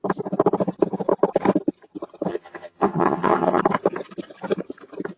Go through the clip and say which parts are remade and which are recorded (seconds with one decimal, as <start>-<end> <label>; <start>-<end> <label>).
0.0-2.3 recorded; 2.3-3.6 remade; 3.6-5.2 recorded